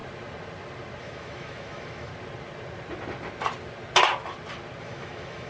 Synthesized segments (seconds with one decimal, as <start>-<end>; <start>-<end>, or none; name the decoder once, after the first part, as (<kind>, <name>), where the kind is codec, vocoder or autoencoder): 1.0-2.1 (autoencoder, DAC-VAE); 4.8-5.5